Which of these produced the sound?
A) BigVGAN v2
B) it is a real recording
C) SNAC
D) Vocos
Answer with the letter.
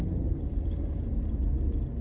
B